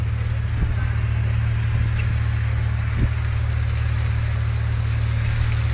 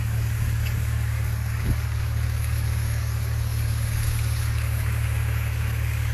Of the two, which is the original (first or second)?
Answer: first